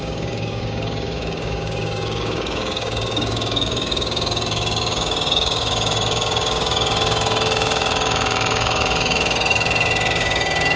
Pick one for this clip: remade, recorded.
remade